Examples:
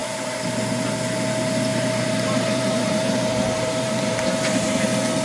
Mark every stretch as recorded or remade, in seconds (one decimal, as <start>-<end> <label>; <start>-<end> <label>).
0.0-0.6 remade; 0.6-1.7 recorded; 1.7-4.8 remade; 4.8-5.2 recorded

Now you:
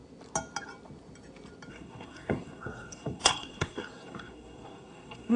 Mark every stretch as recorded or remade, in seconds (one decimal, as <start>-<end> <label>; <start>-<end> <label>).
0.0-1.7 recorded; 1.7-5.4 remade

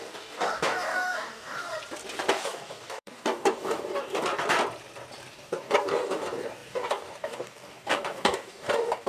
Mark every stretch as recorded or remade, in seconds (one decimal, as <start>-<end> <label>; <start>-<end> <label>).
0.0-1.7 remade; 1.7-2.3 recorded; 2.3-4.3 remade; 4.3-5.3 recorded; 5.3-9.1 remade